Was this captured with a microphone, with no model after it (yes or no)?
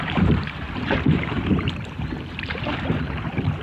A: no